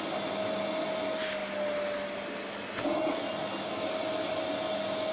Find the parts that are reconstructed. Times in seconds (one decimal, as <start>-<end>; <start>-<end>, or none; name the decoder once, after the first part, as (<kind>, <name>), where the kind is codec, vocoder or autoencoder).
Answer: none